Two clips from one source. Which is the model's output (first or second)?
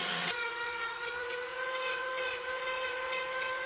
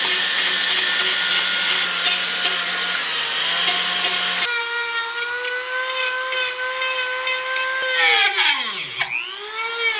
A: first